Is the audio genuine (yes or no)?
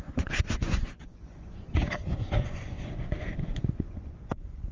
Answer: no